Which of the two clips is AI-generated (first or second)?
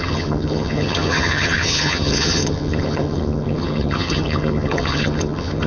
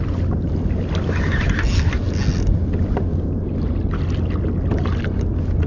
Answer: first